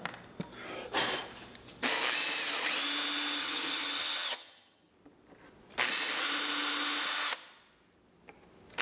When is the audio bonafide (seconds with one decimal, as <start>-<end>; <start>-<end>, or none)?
0.0-3.4; 4.9-8.8